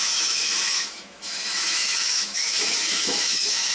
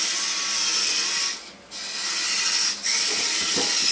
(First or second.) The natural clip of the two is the second